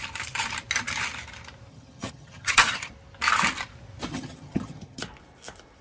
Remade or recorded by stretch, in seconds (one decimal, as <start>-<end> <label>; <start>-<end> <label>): 0.0-1.7 recorded; 1.7-2.9 remade; 2.9-4.1 recorded; 4.1-5.0 remade; 5.0-5.8 recorded